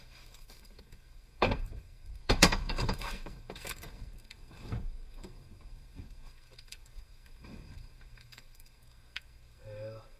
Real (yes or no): no